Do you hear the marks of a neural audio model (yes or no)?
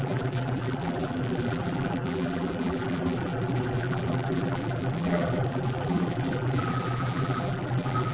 yes